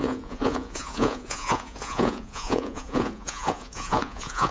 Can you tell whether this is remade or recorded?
remade